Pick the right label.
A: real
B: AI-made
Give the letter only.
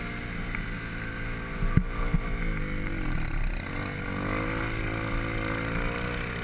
A